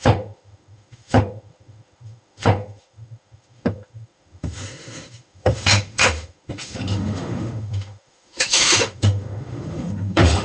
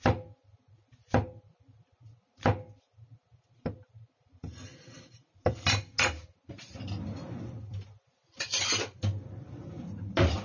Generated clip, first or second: first